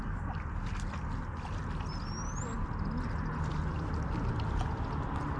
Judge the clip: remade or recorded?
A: recorded